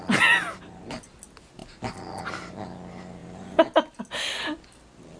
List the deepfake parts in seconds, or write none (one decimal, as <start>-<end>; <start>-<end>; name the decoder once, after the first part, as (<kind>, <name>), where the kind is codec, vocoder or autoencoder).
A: 0.5-1.1 (vocoder, BigVGAN v2); 3.2-4.0